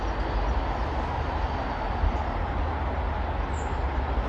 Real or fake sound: real